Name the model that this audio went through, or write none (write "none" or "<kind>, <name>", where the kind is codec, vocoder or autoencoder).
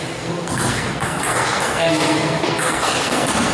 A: codec, SNAC